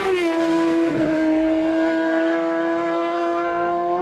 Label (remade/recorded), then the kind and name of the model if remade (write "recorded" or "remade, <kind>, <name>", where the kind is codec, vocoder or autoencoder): remade, codec, SNAC